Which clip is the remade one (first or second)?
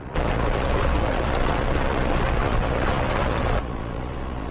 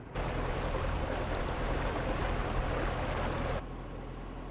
first